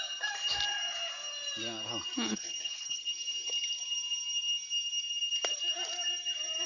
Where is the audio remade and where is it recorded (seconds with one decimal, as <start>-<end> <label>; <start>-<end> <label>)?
0.0-2.3 recorded; 2.3-3.1 remade; 3.1-6.7 recorded